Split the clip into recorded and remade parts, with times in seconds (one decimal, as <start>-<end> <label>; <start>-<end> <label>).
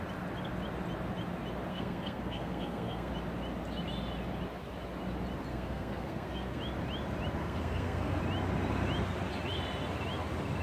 0.0-1.7 recorded; 1.7-3.1 remade; 3.1-5.5 recorded; 5.5-6.6 remade; 6.6-7.4 recorded; 7.4-8.2 remade; 8.2-10.6 recorded